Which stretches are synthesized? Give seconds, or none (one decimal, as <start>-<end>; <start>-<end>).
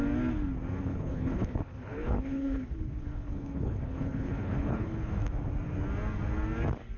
0.9-5.1